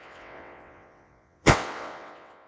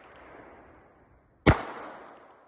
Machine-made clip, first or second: first